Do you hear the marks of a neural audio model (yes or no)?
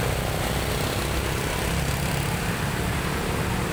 no